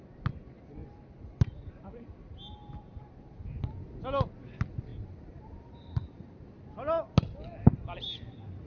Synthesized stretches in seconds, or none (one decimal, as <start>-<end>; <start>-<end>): 4.9-6.6